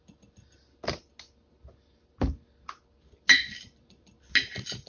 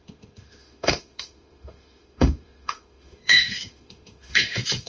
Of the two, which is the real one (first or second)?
first